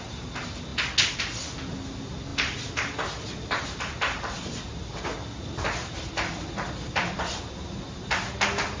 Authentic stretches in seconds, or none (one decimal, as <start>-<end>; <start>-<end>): 0.0-8.8